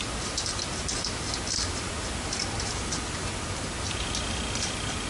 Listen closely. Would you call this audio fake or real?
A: real